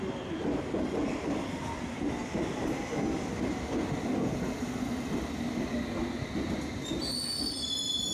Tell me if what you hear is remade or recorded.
recorded